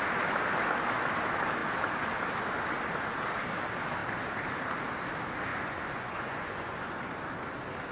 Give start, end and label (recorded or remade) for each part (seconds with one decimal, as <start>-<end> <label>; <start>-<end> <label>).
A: 0.0-5.5 recorded; 5.5-6.9 remade; 6.9-7.9 recorded